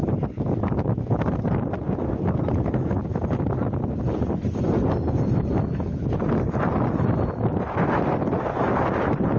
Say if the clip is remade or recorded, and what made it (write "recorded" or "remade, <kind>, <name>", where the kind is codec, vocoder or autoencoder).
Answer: recorded